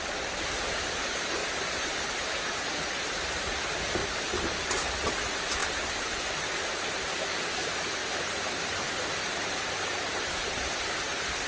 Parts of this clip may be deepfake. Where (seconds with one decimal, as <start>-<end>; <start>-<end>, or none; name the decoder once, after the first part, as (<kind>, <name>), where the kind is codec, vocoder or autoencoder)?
1.4-3.6 (vocoder, BigVGAN v2); 4.0-4.6; 5.6-6.6; 8.0-10.5